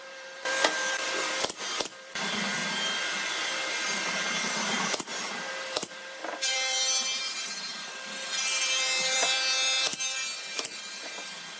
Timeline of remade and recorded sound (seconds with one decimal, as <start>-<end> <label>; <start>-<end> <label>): 0.0-2.6 remade; 2.6-4.8 recorded; 4.8-11.6 remade